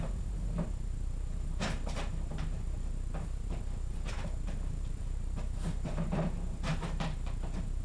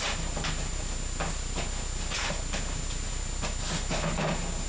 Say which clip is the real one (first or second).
second